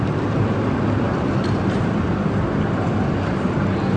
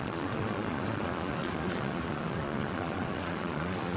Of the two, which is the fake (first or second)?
second